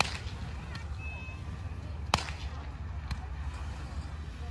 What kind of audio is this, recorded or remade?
recorded